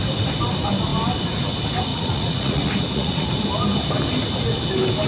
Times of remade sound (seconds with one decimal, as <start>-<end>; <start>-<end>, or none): 1.9-3.3